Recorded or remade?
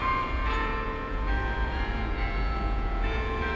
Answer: remade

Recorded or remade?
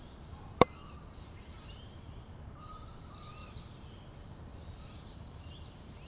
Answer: remade